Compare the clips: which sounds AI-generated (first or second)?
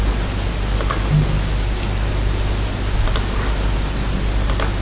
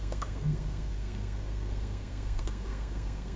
second